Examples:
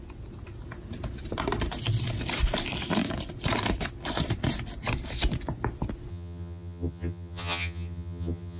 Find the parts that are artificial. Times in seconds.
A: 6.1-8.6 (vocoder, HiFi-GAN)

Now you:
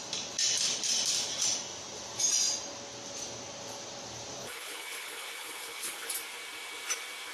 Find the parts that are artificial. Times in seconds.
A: 4.4-6.1 (codec, HILCodec)

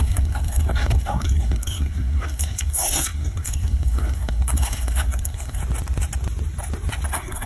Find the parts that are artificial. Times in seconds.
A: 0.0-5.6 (codec, SNAC); 7.1-7.5

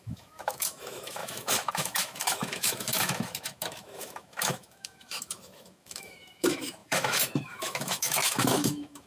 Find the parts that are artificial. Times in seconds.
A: 0.0-9.1 (autoencoder, DAC-VAE)

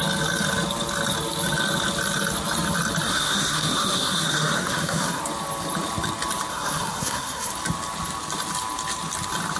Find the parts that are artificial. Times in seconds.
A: 3.1-5.2 (codec, SNAC); 6.5-7.5

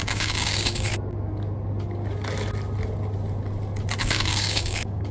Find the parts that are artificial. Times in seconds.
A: 0.0-0.9 (codec, DAC); 4.0-5.1

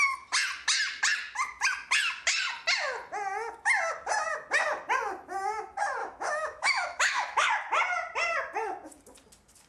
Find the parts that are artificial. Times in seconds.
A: 6.0-7.5 (autoencoder, DAC-VAE)

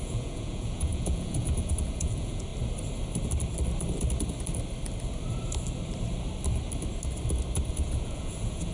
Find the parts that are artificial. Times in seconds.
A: 0.0-2.5 (vocoder, Vocos); 7.7-8.7